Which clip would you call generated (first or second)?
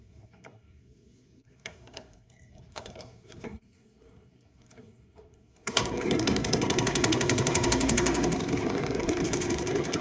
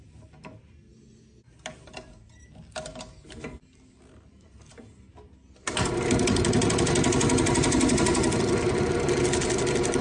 first